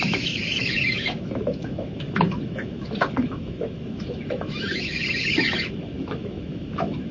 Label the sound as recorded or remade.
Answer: remade